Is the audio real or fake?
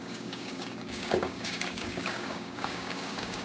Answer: fake